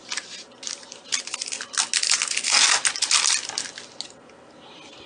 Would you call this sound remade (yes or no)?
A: no